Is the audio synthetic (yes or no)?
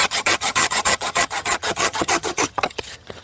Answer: yes